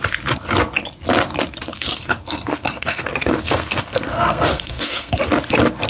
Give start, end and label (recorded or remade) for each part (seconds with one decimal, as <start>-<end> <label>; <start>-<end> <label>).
0.0-1.7 recorded; 1.7-5.2 remade; 5.2-5.9 recorded